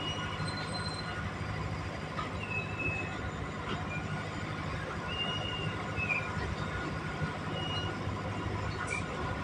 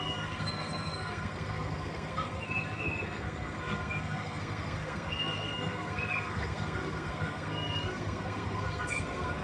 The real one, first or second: first